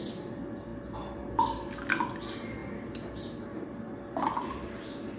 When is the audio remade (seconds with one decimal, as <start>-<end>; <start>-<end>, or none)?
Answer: none